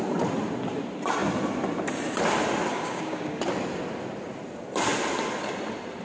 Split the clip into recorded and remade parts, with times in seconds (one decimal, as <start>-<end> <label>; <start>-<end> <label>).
0.0-2.7 recorded; 2.7-3.4 remade; 3.4-6.0 recorded